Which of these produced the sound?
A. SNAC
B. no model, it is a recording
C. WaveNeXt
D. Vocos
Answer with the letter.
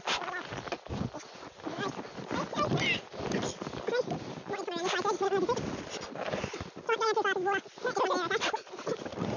B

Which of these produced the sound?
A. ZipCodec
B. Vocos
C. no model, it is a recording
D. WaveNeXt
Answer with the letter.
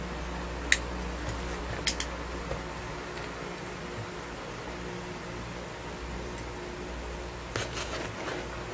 C